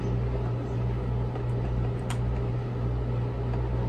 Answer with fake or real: real